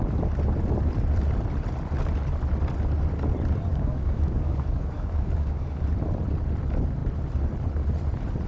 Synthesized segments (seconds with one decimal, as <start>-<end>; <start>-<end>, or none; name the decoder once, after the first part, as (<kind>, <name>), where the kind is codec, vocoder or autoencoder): 3.7-5.8 (codec, DAC)